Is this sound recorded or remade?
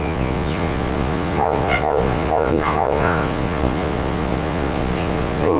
remade